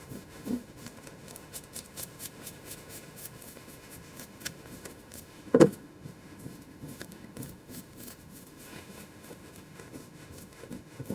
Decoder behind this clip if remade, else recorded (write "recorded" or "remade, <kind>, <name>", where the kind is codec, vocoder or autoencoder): remade, autoencoder, DAC-VAE